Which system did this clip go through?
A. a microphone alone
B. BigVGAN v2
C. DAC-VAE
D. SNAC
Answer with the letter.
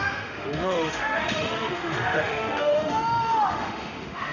C